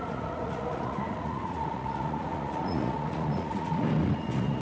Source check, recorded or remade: remade